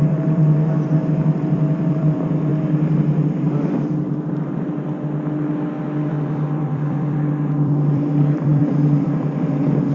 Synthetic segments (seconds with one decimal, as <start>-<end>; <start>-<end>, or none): 0.0-2.5; 6.1-9.9